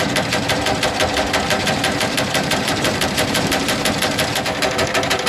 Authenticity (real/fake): fake